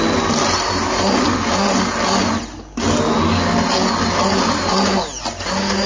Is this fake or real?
real